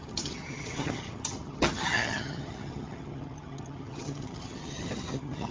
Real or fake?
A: fake